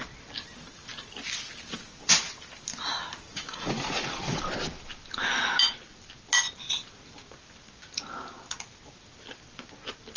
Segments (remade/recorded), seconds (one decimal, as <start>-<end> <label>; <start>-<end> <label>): 0.0-3.3 recorded; 3.3-4.4 remade; 4.4-10.2 recorded